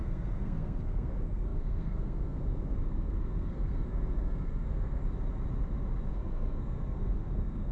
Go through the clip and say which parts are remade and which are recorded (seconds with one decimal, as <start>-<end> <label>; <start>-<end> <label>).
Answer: 0.0-5.0 remade; 5.0-6.1 recorded; 6.1-7.7 remade